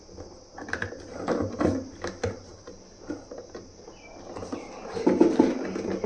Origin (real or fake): real